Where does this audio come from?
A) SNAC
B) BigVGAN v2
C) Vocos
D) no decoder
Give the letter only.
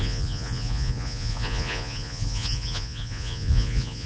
C